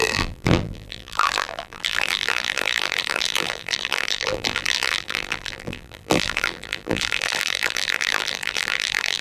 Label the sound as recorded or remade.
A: remade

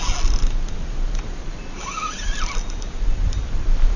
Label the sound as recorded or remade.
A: recorded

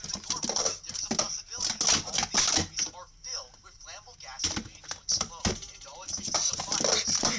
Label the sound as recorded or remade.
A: recorded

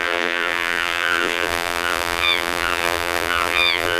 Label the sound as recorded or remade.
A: remade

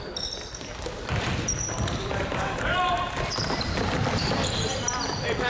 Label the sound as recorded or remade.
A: remade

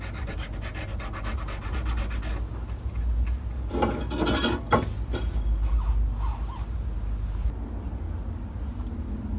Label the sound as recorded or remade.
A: recorded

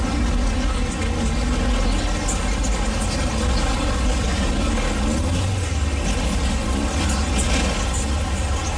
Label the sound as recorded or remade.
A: recorded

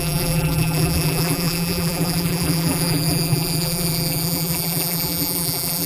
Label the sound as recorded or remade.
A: remade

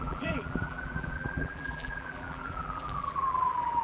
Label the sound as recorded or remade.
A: remade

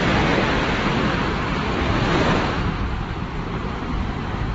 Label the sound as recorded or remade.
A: recorded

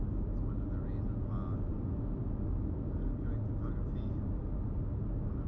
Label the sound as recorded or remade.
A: recorded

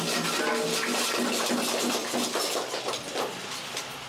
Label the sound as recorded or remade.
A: recorded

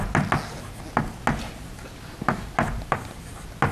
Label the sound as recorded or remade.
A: recorded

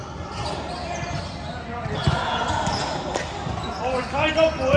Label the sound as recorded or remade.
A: recorded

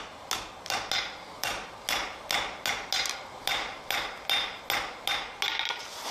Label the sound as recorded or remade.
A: recorded